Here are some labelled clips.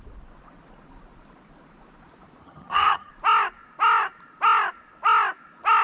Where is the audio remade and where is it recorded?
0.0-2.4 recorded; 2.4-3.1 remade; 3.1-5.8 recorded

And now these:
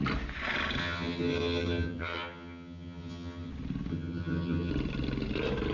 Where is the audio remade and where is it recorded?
0.0-0.8 recorded; 0.8-3.5 remade; 3.5-3.9 recorded; 3.9-4.7 remade; 4.7-5.7 recorded